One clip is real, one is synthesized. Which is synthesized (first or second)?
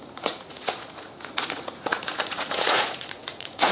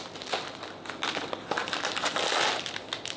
first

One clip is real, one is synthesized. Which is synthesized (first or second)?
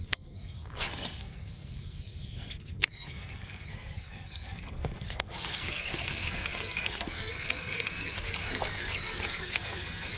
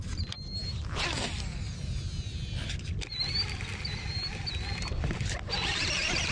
first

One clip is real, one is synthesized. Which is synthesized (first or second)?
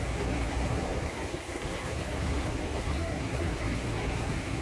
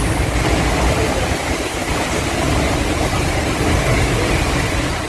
first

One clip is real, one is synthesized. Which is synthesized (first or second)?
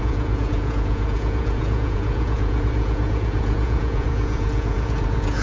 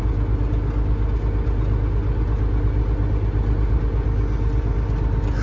first